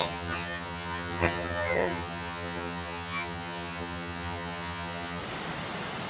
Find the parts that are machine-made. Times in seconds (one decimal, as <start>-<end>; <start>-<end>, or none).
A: 0.0-5.2